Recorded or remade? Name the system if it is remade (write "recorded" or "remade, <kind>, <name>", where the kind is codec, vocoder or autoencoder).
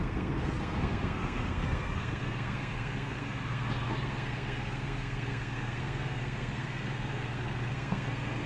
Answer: remade, codec, SNAC